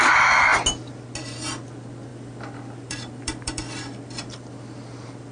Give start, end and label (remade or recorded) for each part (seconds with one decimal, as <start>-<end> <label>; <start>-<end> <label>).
0.0-2.1 recorded; 2.1-5.3 remade